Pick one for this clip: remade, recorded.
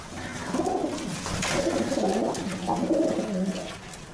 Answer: recorded